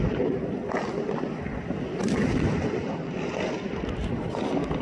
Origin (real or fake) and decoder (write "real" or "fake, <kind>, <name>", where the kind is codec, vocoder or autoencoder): real